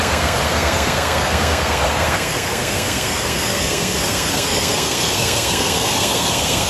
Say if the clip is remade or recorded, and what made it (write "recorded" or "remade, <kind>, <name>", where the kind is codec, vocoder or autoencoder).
remade, codec, SNAC